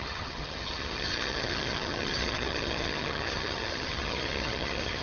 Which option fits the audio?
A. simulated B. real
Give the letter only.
A